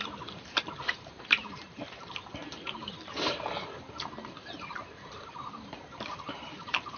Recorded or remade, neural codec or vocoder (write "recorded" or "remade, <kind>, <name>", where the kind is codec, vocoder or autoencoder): remade, vocoder, BigVGAN v2